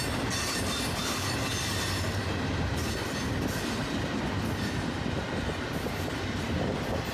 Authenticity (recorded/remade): recorded